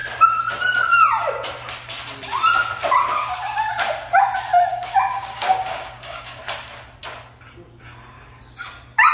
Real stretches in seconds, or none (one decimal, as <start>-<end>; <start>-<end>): 0.0-3.0; 3.7-4.7; 6.4-9.1